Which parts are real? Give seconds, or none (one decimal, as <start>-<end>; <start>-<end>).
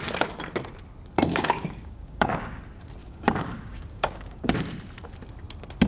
0.0-1.3; 2.6-3.0; 4.5-5.9